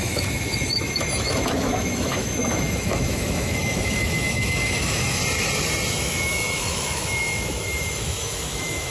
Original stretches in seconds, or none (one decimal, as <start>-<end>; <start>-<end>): 5.2-5.9